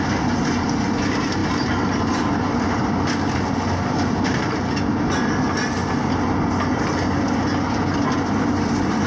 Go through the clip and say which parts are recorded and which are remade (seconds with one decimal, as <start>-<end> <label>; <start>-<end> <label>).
0.0-9.1 recorded